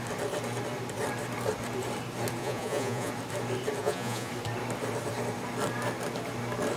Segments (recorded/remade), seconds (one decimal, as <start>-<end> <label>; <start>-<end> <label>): 0.0-2.4 recorded; 2.4-3.1 remade; 3.1-3.8 recorded; 3.8-4.3 remade; 4.3-6.8 recorded